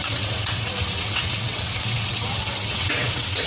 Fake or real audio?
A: fake